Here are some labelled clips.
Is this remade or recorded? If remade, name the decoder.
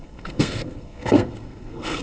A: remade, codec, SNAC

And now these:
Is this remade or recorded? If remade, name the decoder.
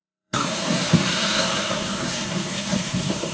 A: remade, codec, SNAC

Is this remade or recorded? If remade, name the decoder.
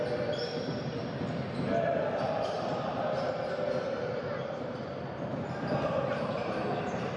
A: remade, vocoder, BigVGAN v2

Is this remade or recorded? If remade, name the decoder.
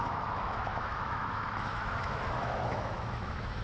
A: remade, autoencoder, DAC-VAE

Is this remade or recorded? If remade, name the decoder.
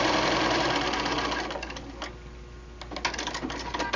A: recorded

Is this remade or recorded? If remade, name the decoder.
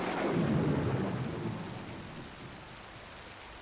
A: recorded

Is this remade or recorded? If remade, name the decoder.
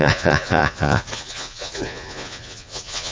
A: remade, vocoder, Vocos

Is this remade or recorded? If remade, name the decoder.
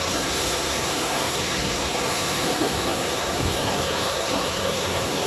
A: remade, codec, SNAC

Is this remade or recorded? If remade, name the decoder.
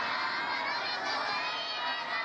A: recorded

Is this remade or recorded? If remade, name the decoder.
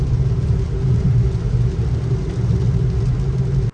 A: recorded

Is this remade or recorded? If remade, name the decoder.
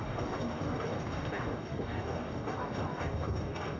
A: remade, codec, DAC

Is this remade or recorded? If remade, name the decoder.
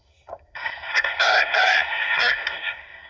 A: remade, codec, SNAC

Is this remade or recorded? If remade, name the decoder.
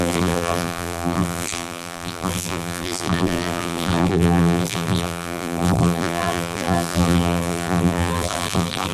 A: remade, vocoder, BigVGAN v2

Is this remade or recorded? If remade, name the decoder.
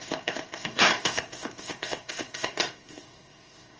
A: remade, codec, SNAC